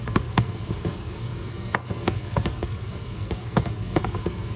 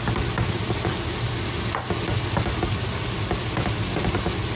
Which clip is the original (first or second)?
second